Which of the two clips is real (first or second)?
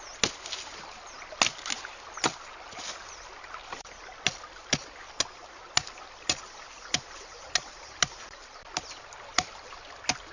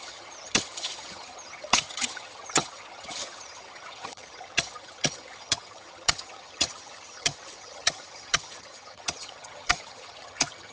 first